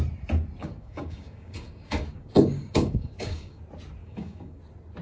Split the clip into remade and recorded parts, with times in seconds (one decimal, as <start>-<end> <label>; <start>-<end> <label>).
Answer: 0.0-0.6 recorded; 0.6-3.6 remade; 3.6-4.0 recorded; 4.0-4.6 remade; 4.6-5.0 recorded